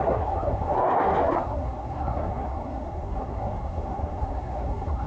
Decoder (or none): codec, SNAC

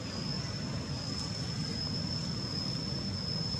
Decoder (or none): none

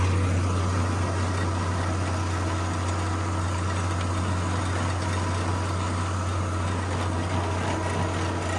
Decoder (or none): none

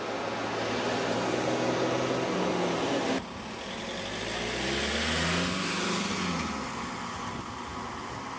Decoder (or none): none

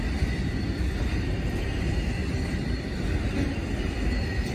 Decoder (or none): none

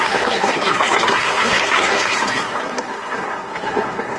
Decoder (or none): codec, SNAC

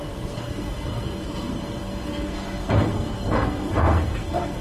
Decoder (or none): codec, SNAC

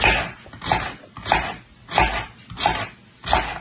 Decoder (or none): none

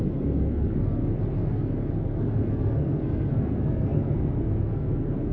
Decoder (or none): codec, SNAC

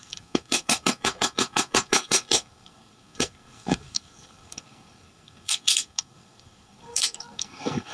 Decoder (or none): codec, SNAC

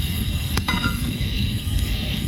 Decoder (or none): codec, SNAC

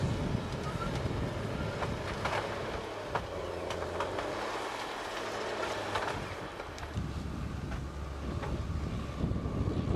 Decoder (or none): none